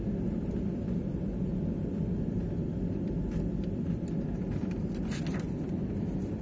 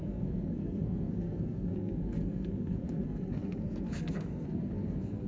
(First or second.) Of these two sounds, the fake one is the second